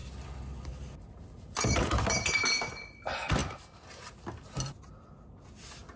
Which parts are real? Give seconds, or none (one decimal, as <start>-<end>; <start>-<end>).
0.0-6.0